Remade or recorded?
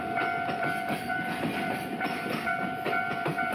remade